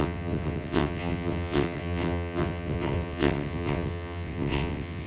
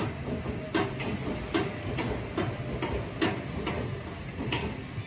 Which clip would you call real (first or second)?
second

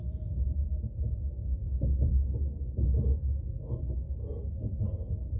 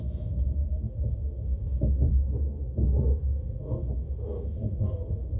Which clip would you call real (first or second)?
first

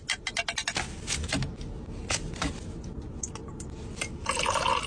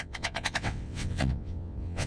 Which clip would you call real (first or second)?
first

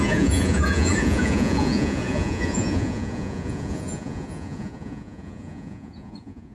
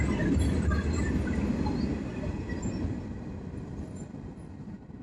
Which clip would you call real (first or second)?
second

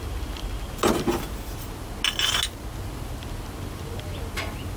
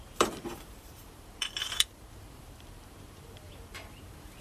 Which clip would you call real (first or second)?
first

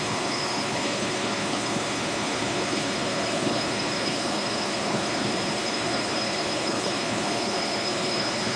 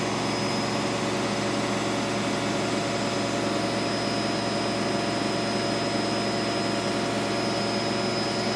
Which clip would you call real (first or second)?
second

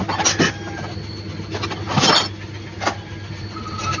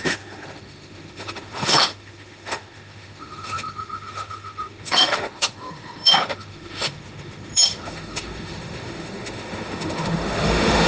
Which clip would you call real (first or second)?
first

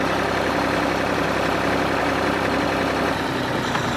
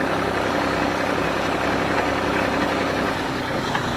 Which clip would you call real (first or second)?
first